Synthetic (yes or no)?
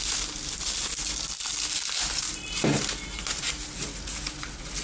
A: no